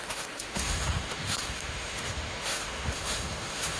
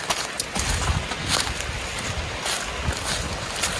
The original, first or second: second